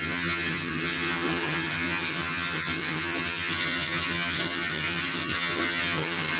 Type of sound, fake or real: fake